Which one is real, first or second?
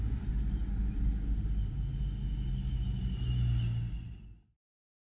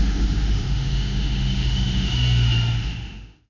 first